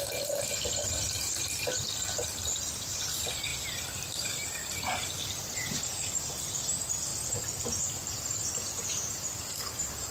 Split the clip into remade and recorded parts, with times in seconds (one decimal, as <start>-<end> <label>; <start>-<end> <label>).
0.0-7.1 remade; 7.1-7.8 recorded; 7.8-10.1 remade